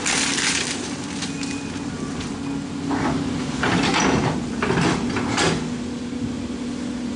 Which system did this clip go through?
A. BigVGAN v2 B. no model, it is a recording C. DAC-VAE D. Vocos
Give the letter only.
B